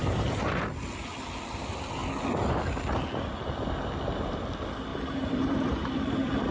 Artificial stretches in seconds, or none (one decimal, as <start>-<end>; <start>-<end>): 0.0-0.6; 4.9-6.1